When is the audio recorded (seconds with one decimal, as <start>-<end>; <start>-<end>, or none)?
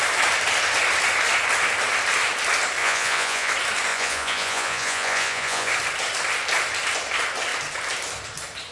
0.0-2.8; 3.5-3.9; 5.7-8.7